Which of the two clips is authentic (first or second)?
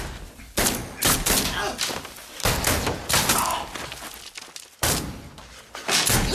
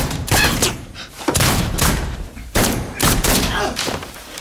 first